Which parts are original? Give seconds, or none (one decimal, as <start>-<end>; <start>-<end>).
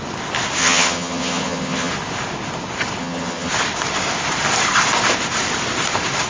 0.0-0.6; 1.9-3.0; 3.5-6.3